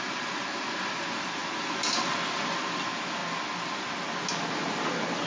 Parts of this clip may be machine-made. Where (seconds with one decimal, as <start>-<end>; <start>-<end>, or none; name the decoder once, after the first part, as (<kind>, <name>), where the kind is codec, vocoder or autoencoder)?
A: none